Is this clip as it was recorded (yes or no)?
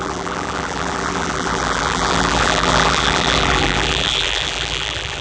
no